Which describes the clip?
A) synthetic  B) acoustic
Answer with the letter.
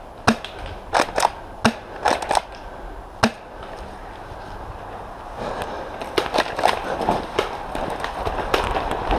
B